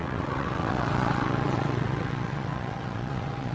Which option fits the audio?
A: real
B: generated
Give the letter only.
B